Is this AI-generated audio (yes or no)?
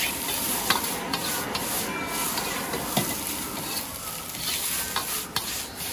no